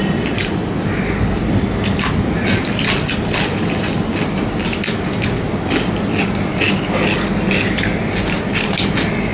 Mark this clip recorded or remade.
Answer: recorded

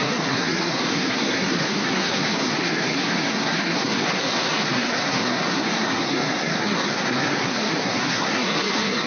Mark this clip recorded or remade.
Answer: remade